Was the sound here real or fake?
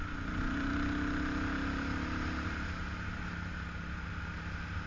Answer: real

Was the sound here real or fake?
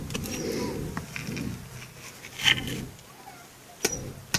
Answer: real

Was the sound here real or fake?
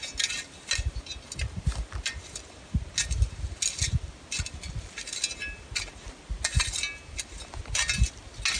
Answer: real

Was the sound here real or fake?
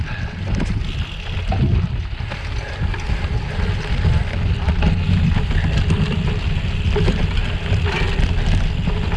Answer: real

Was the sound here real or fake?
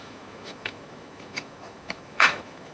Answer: fake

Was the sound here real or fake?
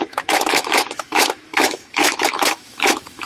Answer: fake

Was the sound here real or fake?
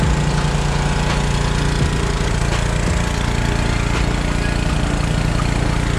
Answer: real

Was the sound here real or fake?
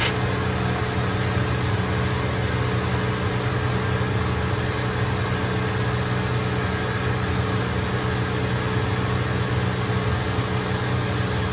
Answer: real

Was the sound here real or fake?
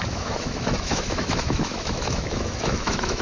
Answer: fake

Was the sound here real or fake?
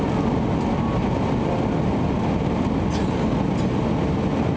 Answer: real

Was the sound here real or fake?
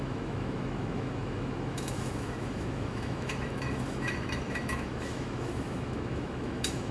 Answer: fake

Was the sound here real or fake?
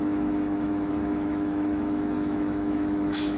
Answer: fake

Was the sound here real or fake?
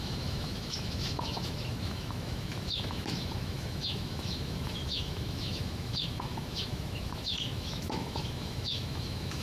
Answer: fake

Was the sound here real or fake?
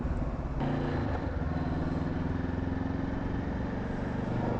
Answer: real